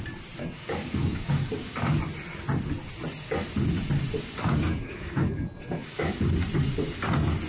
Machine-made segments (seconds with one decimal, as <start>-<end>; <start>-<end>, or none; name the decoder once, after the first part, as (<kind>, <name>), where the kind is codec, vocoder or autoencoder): 0.4-2.0 (codec, DAC); 4.7-6.2